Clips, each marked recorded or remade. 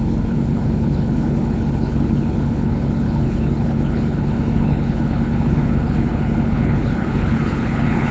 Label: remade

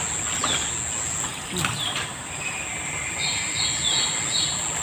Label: recorded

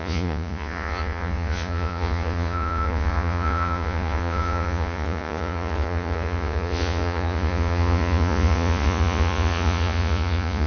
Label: remade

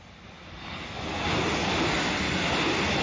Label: recorded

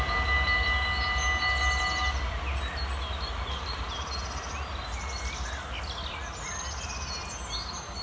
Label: recorded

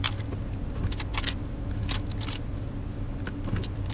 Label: recorded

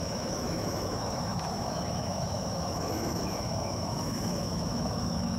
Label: remade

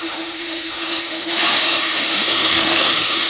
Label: remade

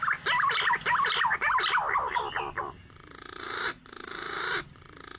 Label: recorded